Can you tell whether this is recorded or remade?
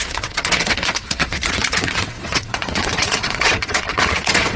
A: remade